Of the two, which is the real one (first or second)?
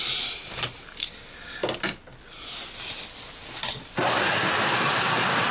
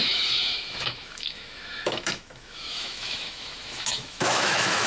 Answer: first